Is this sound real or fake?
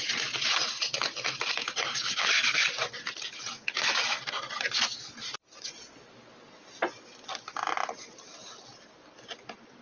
real